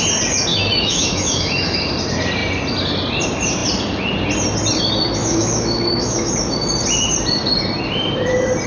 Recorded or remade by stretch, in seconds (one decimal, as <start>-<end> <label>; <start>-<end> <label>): 0.0-0.5 recorded; 0.5-1.8 remade; 1.8-5.2 recorded; 5.2-6.3 remade; 6.3-8.7 recorded